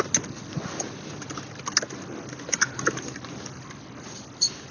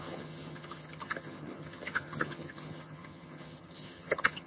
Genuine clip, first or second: first